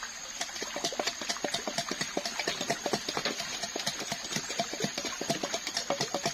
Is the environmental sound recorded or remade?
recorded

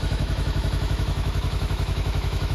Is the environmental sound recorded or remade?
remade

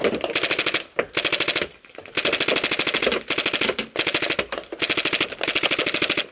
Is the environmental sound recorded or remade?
recorded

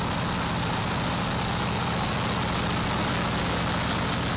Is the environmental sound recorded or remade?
recorded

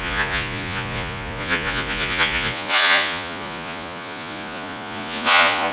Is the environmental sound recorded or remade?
remade